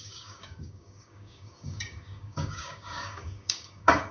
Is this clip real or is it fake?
fake